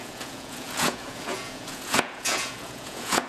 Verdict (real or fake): fake